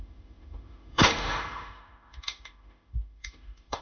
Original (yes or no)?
no